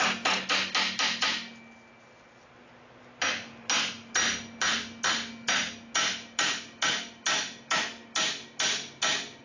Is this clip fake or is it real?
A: real